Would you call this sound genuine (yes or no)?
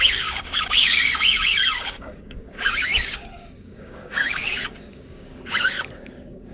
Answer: no